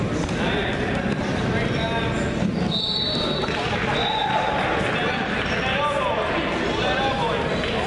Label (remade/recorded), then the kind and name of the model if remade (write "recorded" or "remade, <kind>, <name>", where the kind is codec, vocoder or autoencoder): recorded